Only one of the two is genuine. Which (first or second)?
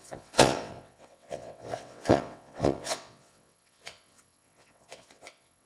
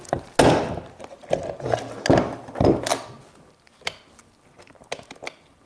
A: second